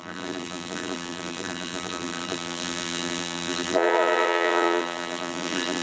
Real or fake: fake